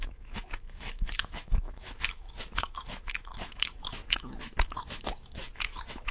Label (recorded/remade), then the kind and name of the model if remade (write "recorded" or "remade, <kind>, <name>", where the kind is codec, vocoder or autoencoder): remade, autoencoder, DAC-VAE